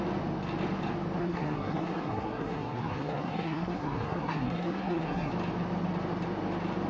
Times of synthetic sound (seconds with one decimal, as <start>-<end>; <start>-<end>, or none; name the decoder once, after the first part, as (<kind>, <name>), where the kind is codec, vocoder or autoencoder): 1.2-5.3 (codec, SNAC)